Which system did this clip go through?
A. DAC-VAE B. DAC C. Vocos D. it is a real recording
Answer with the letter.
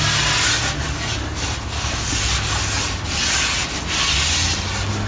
D